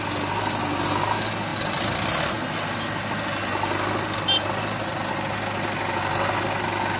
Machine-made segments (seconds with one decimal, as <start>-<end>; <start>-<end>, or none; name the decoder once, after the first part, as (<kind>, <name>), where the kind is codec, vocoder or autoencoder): none